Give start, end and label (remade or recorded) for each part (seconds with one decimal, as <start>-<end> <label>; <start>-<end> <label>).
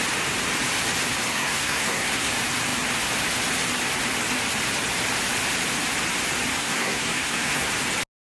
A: 0.0-1.3 recorded; 1.3-2.3 remade; 2.3-6.6 recorded; 6.6-7.7 remade; 7.7-8.2 recorded